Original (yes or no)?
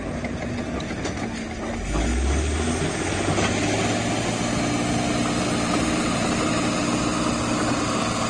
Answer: yes